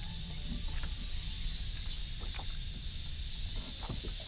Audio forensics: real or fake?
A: real